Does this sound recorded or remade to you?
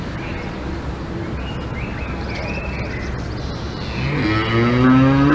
recorded